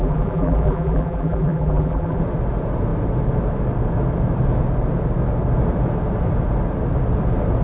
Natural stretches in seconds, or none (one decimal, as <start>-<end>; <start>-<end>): 2.2-7.6